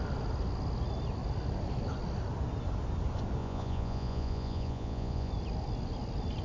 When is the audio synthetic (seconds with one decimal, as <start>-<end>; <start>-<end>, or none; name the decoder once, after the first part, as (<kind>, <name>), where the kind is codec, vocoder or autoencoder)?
3.4-5.3 (vocoder, Vocos)